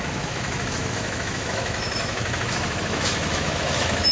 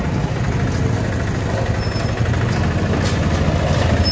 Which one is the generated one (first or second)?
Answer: first